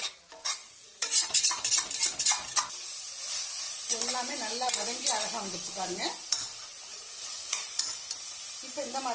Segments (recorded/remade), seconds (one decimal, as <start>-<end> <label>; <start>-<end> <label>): 0.0-0.6 recorded; 0.6-1.4 remade; 1.4-6.9 recorded; 6.9-8.1 remade; 8.1-9.1 recorded